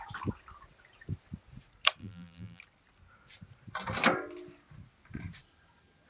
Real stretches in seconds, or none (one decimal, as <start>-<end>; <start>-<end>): 0.0-2.0; 2.6-6.1